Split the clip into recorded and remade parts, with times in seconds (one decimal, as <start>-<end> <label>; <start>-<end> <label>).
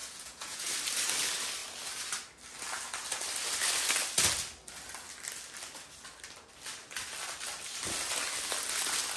0.0-0.7 remade; 0.7-9.2 recorded